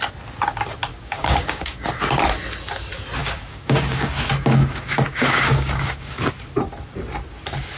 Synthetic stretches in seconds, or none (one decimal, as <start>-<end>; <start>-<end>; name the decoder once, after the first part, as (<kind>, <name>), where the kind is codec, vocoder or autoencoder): 0.9-1.9 (codec, DAC); 3.2-6.3